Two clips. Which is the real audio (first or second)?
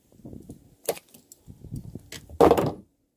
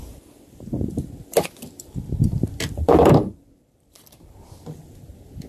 first